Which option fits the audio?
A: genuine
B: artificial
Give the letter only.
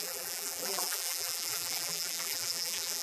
B